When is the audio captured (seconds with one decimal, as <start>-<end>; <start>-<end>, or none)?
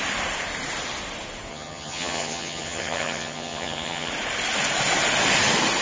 0.0-1.5; 4.1-5.8